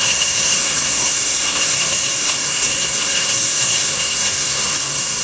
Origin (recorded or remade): remade